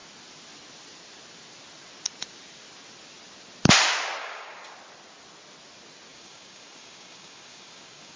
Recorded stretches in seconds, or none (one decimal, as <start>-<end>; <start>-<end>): 0.0-4.2; 4.7-6.1